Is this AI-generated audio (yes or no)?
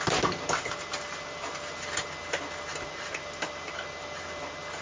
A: no